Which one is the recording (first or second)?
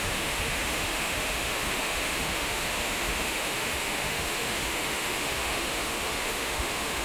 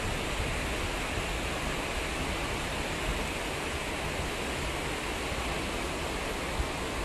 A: second